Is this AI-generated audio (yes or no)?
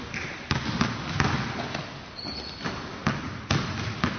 no